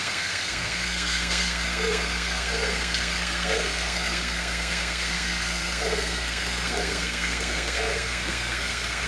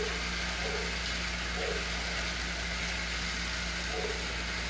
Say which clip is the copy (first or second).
first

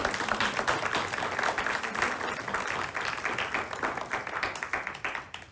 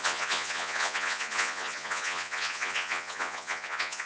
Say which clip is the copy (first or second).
second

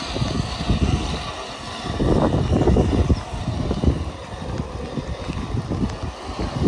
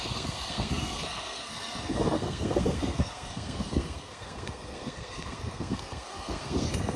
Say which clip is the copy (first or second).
second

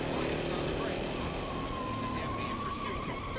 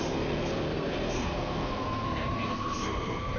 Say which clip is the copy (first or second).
second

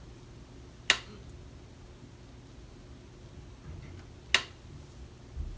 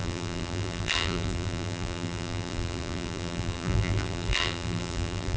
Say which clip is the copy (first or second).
second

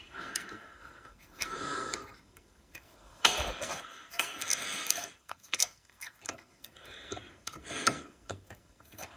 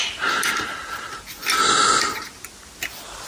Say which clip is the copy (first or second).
first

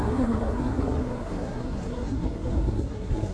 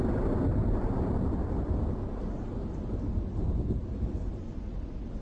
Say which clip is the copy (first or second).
first